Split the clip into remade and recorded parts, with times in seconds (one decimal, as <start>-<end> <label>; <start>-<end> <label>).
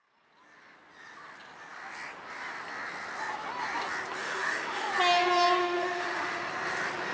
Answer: 0.0-4.2 recorded; 4.2-4.9 remade; 4.9-5.6 recorded; 5.6-6.5 remade; 6.5-7.1 recorded